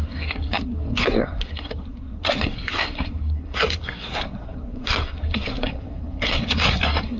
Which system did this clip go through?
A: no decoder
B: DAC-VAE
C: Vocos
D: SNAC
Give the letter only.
D